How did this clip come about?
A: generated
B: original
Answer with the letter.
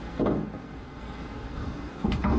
A